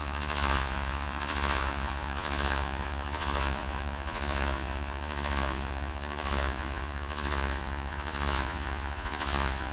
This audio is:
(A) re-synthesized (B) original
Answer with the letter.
A